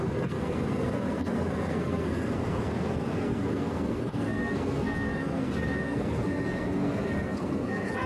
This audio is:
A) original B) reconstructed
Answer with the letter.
B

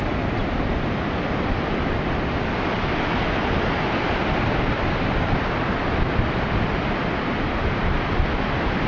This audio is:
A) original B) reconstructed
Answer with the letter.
A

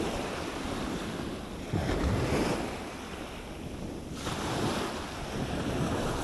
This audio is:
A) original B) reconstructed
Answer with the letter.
A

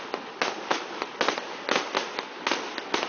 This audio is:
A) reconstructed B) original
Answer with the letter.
B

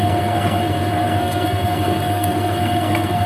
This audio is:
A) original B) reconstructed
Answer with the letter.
B